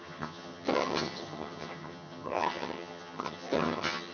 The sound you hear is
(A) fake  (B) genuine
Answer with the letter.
A